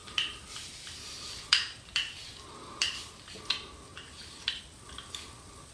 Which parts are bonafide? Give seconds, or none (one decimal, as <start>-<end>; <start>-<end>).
3.4-3.9; 4.6-5.7